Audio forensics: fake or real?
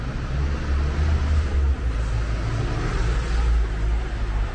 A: real